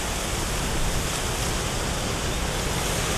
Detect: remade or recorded recorded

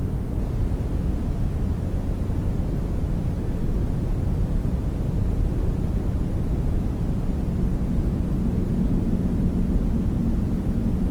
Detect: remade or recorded recorded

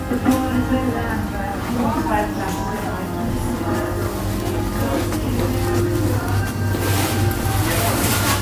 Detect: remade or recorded recorded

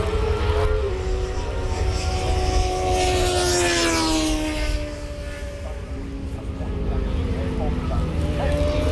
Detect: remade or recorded recorded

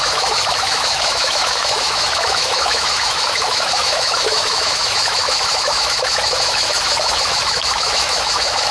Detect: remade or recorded remade